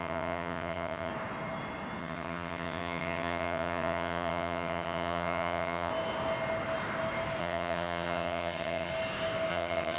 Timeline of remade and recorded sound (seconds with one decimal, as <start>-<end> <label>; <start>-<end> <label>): 0.0-1.1 remade; 1.1-2.0 recorded; 2.0-5.9 remade; 5.9-7.4 recorded; 7.4-8.9 remade; 8.9-9.5 recorded; 9.5-10.0 remade

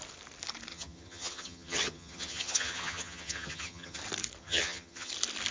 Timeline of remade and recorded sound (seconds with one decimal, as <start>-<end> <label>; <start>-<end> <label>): 0.0-0.7 recorded; 0.7-4.0 remade; 4.0-4.4 recorded; 4.4-5.1 remade; 5.1-5.5 recorded

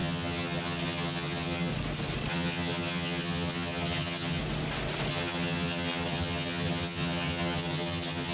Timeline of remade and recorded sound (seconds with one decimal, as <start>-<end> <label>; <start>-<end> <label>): 0.0-1.7 remade; 1.7-2.3 recorded; 2.3-4.4 remade; 4.4-5.1 recorded; 5.1-8.3 remade